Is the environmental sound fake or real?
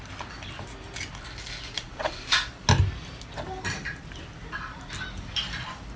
real